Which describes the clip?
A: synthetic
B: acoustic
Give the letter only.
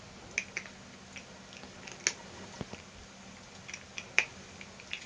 B